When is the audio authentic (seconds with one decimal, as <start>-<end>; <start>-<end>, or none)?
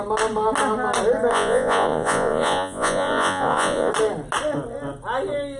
0.0-1.3; 3.9-5.6